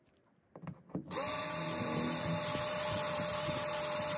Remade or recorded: recorded